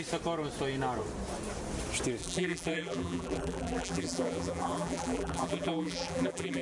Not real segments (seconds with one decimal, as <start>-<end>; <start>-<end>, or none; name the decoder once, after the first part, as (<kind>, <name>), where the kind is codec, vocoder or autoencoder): 2.2-6.6 (vocoder, BigVGAN v2)